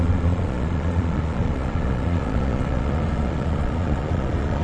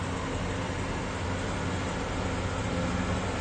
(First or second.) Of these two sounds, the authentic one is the second